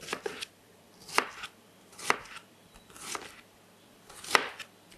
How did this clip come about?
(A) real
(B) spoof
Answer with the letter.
B